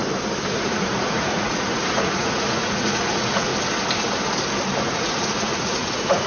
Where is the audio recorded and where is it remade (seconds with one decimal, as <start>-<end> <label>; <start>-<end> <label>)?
0.0-0.5 recorded; 0.5-3.5 remade; 3.5-4.8 recorded; 4.8-6.3 remade